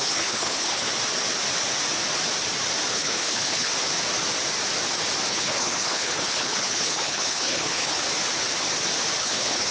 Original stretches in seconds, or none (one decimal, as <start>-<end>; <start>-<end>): 0.9-2.9; 3.7-5.3; 8.0-9.2